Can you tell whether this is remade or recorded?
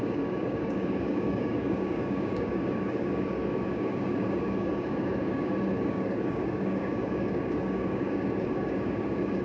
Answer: remade